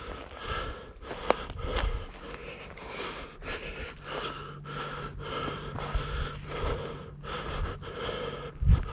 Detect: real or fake real